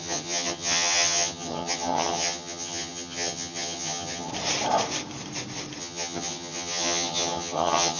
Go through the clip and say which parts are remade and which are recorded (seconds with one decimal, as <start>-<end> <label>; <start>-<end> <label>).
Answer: 0.0-4.3 remade; 4.3-5.8 recorded; 5.8-8.0 remade